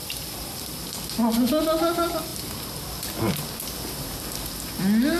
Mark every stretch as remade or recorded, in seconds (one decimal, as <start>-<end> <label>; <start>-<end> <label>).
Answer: 0.0-0.8 remade; 0.8-5.2 recorded